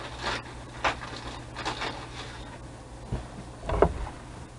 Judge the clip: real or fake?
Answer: real